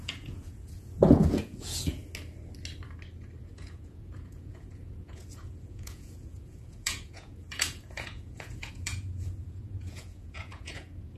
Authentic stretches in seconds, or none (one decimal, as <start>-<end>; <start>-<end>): 2.0-3.5